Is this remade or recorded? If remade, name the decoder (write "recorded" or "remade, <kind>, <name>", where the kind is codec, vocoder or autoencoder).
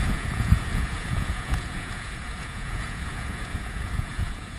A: remade, vocoder, Vocos